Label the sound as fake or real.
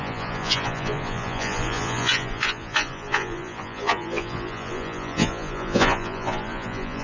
fake